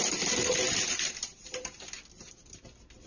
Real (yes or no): yes